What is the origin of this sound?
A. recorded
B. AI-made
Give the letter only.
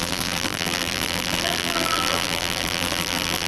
B